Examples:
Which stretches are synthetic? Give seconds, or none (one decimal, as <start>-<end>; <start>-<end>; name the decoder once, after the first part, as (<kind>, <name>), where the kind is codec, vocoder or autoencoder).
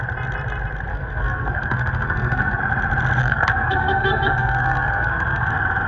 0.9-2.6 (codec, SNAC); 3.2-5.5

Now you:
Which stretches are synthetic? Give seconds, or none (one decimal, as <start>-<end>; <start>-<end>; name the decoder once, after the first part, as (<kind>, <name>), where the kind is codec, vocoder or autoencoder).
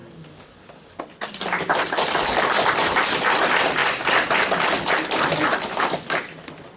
0.0-1.0 (codec, DAC)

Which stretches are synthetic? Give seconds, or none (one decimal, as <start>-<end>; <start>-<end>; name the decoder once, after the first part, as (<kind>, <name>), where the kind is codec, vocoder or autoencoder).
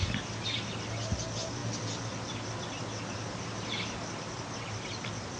none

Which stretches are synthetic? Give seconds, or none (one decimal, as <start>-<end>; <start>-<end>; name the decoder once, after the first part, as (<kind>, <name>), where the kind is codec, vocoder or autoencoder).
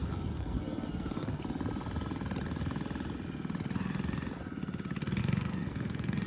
0.0-1.4 (codec, SNAC); 5.2-6.3